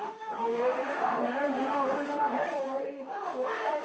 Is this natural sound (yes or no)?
no